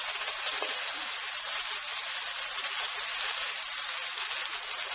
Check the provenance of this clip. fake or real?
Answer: real